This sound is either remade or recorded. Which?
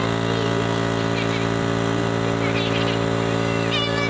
recorded